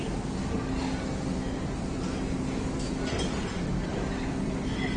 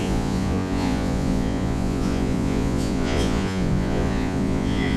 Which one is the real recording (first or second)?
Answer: first